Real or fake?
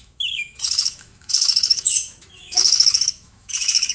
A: fake